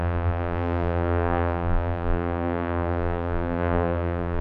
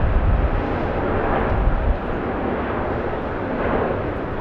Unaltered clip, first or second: second